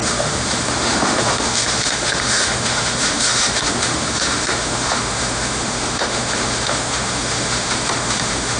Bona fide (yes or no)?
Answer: no